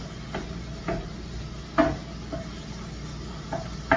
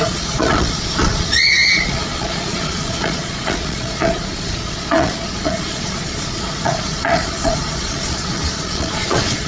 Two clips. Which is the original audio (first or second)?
first